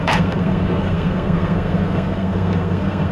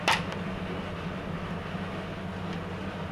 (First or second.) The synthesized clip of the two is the first